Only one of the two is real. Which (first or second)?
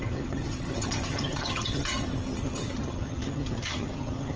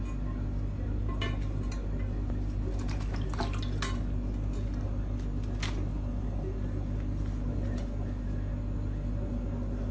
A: second